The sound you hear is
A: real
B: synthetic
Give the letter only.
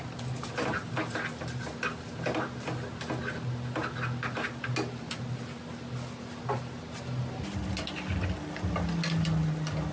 A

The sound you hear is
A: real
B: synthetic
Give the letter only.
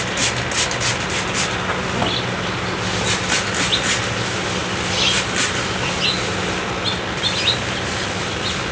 A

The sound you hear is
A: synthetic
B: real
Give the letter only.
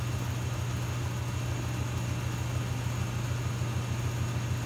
B